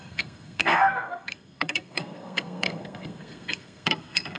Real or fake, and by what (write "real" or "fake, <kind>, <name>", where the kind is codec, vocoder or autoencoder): fake, codec, SNAC